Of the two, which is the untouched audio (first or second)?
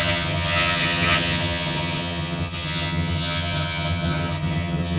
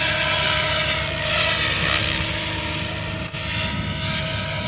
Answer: second